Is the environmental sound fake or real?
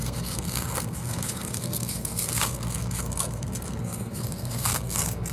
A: fake